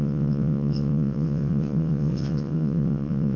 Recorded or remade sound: remade